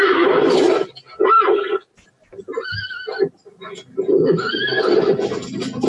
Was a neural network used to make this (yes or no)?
no